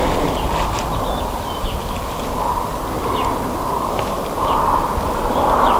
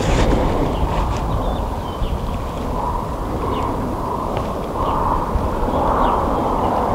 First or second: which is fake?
second